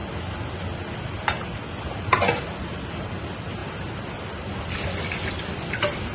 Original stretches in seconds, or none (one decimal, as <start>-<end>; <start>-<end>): 0.0-2.4

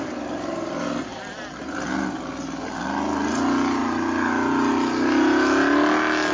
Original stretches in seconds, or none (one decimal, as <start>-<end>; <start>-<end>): 0.0-6.3

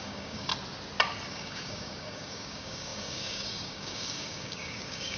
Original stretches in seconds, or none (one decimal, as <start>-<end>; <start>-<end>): 0.5-1.3

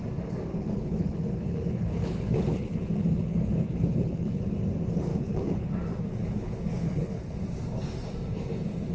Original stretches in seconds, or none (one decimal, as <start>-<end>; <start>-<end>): 0.0-0.5; 4.4-5.1; 5.7-6.2; 7.4-8.9

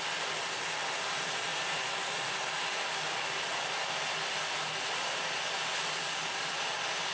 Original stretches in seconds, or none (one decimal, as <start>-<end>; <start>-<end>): 0.0-1.5; 2.4-7.1

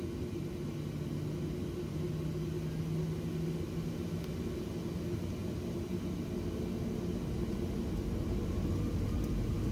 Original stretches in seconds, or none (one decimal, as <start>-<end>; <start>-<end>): 0.0-9.7